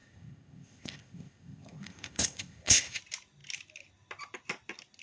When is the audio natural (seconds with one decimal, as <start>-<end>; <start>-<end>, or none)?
3.0-5.0